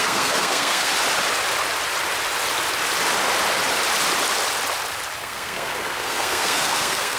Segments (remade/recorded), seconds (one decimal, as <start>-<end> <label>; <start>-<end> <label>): 0.0-0.9 remade; 0.9-5.2 recorded; 5.2-7.2 remade